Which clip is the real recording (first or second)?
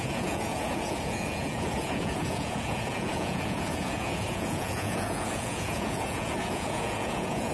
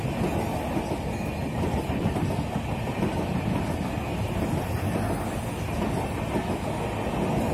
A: second